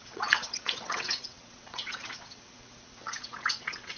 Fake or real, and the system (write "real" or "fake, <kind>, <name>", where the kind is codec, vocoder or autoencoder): fake, vocoder, WaveNeXt